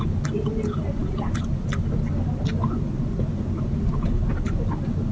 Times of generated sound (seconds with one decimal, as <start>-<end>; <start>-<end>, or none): none